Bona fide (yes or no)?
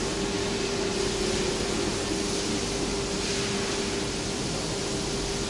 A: yes